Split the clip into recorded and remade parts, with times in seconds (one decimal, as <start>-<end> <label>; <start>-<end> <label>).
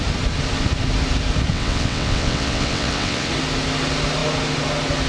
0.0-1.5 recorded; 1.5-3.3 remade; 3.3-5.1 recorded